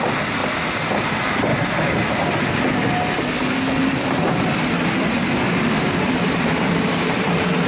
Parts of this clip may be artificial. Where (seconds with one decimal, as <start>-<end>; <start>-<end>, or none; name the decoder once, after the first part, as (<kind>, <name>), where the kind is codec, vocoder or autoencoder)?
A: 0.0-0.4 (vocoder, BigVGAN v2); 1.1-1.5; 5.8-7.7